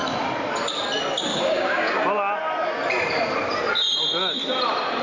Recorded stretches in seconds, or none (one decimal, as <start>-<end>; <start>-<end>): 0.0-1.3; 1.9-5.0